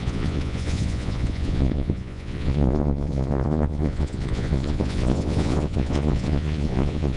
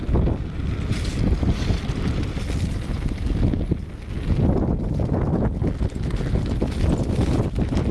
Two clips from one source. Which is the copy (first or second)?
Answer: first